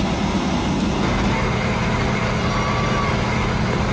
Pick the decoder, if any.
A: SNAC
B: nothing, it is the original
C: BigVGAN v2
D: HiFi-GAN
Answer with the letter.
B